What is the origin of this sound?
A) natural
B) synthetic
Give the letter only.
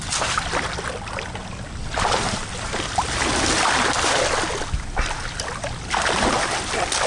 A